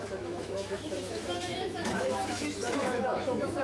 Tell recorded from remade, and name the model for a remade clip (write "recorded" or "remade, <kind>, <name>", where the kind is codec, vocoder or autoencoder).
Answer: remade, autoencoder, DAC-VAE